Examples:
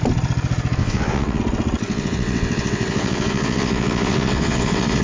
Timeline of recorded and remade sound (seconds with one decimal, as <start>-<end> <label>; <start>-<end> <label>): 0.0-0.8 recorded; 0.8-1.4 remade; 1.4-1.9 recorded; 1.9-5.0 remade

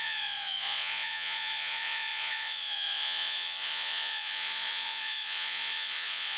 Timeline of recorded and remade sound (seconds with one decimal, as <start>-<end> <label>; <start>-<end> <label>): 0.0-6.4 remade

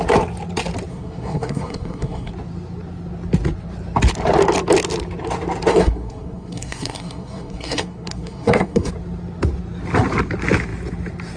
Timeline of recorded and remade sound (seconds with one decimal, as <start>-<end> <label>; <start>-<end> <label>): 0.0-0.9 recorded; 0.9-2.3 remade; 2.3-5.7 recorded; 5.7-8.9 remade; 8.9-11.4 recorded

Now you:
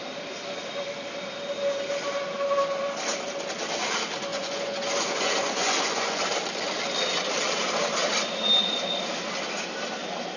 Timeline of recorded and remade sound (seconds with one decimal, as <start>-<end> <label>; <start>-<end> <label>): 0.0-4.3 recorded; 4.3-6.2 remade; 6.2-10.4 recorded

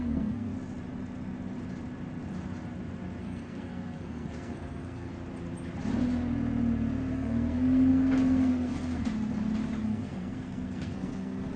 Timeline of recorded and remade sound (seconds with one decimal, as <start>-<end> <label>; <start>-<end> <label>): 0.0-0.5 remade; 0.5-3.2 recorded; 3.2-5.1 remade; 5.1-7.1 recorded; 7.1-9.1 remade; 9.1-9.8 recorded; 9.8-11.6 remade